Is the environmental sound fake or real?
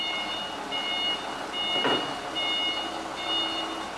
real